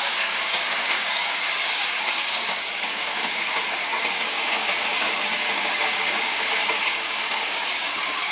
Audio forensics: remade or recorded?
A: remade